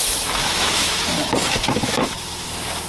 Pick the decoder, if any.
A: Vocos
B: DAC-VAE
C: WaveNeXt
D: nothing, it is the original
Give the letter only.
B